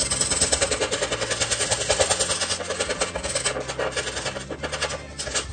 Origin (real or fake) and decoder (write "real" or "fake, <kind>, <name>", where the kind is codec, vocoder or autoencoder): real